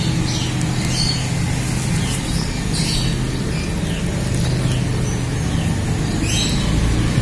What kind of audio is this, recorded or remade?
recorded